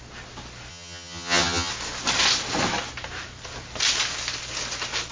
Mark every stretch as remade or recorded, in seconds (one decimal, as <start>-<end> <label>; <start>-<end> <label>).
0.0-0.7 recorded; 0.7-1.7 remade; 1.7-5.1 recorded